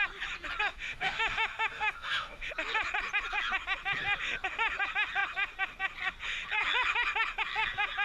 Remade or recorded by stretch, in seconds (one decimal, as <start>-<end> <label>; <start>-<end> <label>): 0.0-0.7 recorded; 0.7-2.5 remade; 2.5-8.0 recorded